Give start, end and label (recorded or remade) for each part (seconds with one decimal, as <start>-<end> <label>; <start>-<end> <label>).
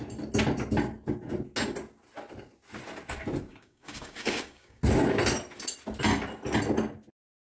0.0-3.5 recorded; 3.5-4.8 remade; 4.8-7.4 recorded